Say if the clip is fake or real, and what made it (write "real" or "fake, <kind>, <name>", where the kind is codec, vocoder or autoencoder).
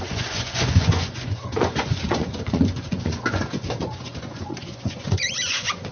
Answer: fake, vocoder, Vocos